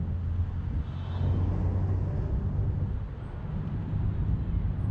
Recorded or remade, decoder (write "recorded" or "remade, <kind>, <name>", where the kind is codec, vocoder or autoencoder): recorded